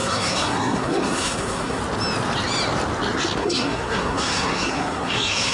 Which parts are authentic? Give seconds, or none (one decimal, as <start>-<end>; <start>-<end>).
1.8-3.4